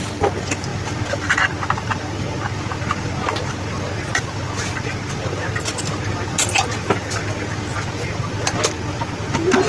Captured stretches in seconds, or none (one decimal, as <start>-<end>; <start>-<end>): 0.0-9.7